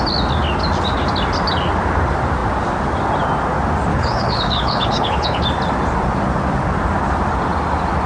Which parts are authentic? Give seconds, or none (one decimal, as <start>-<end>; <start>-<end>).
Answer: 0.0-3.9; 5.4-8.1